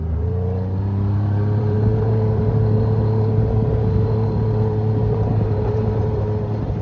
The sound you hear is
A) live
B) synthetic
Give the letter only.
B